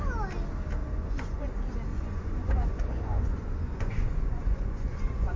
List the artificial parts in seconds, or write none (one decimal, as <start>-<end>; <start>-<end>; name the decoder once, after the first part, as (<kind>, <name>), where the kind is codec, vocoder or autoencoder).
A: 0.8-1.5 (vocoder, Vocos); 1.9-5.4